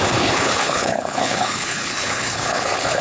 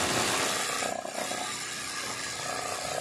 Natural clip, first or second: second